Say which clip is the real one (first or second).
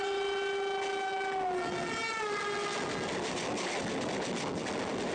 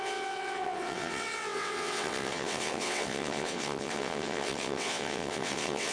first